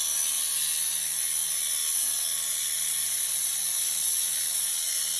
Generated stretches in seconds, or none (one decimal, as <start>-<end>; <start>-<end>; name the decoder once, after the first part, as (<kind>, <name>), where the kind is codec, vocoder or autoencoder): none